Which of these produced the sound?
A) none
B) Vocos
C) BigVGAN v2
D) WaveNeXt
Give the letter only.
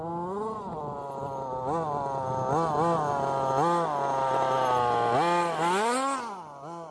A